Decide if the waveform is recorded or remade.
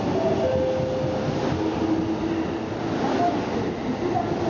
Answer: recorded